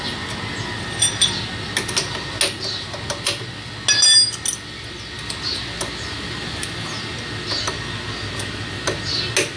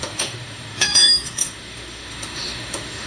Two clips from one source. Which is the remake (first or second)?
second